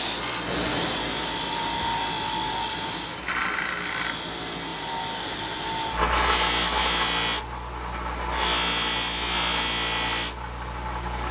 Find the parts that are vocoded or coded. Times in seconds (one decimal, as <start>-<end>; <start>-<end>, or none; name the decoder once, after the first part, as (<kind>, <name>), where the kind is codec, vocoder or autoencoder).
none